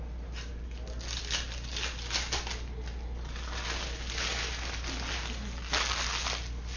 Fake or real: real